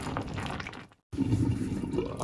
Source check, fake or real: real